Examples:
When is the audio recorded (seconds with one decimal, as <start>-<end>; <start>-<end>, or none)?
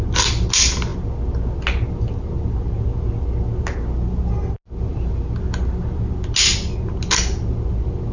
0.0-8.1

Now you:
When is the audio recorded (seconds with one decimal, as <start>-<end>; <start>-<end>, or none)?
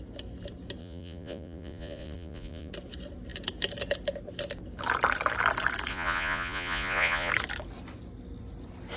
0.0-0.8; 2.7-5.9; 7.3-9.0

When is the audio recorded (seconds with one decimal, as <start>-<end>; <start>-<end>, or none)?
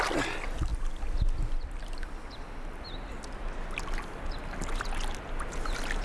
0.0-6.0